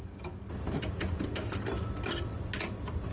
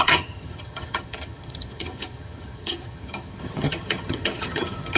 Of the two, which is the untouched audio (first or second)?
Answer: first